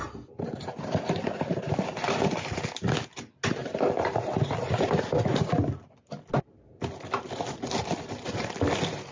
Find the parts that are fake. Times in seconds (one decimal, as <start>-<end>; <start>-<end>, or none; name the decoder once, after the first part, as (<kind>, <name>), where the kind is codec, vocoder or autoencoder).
3.6-4.9 (vocoder, BigVGAN v2)